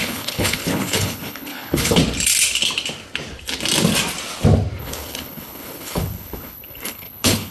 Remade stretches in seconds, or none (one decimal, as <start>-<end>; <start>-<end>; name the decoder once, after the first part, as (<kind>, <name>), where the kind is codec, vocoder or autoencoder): 0.0-2.0 (codec, HILCodec); 4.8-7.5